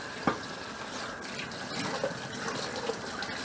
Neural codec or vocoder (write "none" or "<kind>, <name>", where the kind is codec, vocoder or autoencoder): none